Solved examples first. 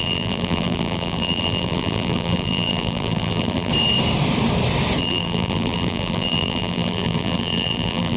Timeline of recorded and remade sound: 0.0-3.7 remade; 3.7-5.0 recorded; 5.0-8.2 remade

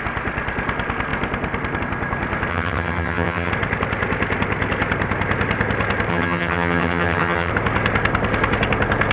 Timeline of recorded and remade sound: 0.0-2.5 recorded; 2.5-3.5 remade; 3.5-6.1 recorded; 6.1-7.5 remade; 7.5-9.1 recorded

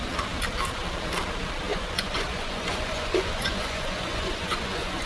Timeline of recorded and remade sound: 0.0-1.7 recorded; 1.7-5.1 remade

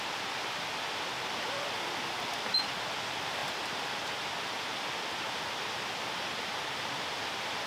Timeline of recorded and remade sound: 0.0-7.7 recorded